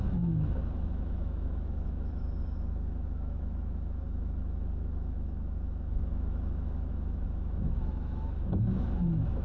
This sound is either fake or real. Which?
fake